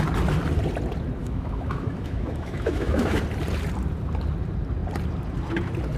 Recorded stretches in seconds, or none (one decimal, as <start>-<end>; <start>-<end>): 0.0-1.2; 3.2-6.0